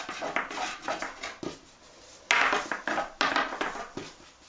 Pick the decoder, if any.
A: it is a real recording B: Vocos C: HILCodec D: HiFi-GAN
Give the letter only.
A